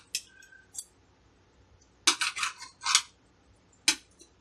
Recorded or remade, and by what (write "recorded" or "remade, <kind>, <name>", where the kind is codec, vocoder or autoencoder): recorded